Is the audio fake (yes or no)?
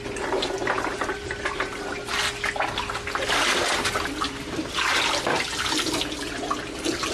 no